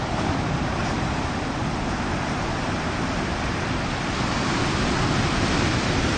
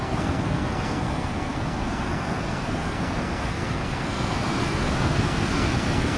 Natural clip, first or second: first